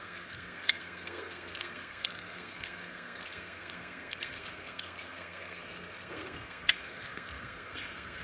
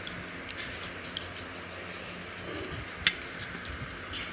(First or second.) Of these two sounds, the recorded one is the second